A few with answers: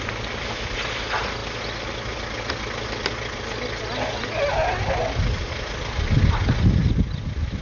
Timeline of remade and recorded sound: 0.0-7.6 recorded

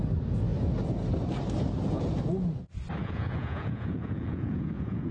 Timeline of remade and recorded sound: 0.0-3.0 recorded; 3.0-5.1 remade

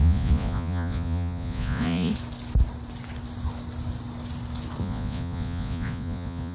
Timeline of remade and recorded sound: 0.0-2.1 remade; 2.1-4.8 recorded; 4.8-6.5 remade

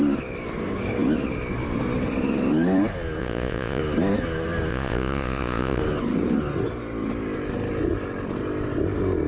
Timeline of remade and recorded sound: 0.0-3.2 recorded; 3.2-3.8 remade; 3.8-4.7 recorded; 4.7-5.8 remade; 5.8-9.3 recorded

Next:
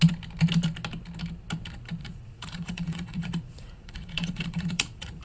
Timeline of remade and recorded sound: 0.0-2.0 recorded; 2.0-5.2 remade